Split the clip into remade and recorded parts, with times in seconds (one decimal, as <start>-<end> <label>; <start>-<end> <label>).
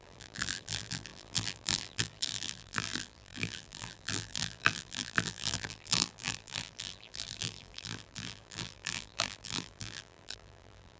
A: 0.0-11.0 remade